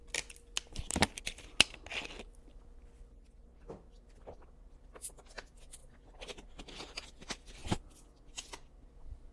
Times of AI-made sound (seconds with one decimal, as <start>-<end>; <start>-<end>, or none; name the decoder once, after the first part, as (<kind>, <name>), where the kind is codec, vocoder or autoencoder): none